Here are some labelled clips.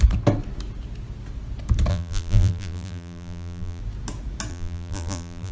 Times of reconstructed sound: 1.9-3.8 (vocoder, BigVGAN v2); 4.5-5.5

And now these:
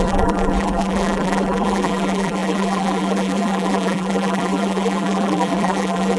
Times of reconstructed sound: 0.0-6.2 (vocoder, BigVGAN v2)

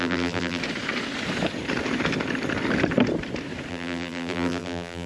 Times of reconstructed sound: 0.0-0.6 (vocoder, BigVGAN v2); 3.7-5.1

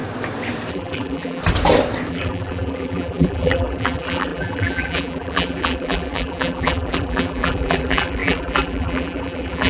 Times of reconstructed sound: 0.7-1.4 (vocoder, BigVGAN v2); 2.1-9.7

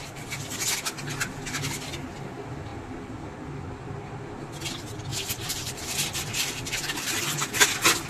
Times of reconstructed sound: 5.1-7.2 (vocoder, BigVGAN v2)

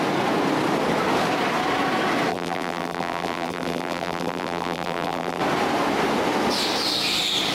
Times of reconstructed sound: 2.3-5.4 (vocoder, BigVGAN v2)